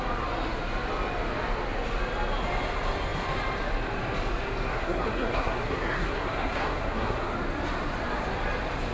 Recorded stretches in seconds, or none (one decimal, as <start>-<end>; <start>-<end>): 0.0-4.7; 7.3-8.9